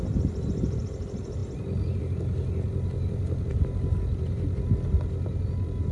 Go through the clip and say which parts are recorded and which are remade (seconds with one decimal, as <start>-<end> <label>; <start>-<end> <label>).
0.0-5.9 recorded